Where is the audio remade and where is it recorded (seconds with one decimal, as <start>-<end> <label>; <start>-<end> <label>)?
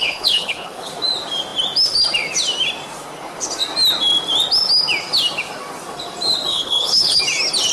0.0-0.9 remade; 0.9-6.5 recorded; 6.5-7.2 remade; 7.2-7.7 recorded